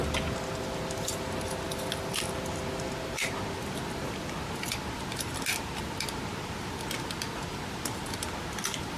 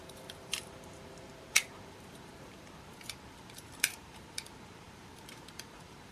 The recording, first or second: first